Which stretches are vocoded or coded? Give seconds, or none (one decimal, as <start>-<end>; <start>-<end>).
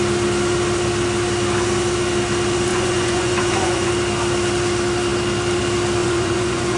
2.7-3.9; 6.0-6.8